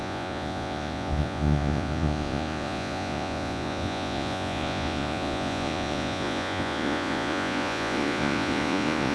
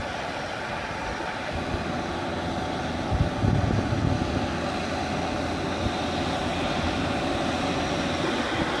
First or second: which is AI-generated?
first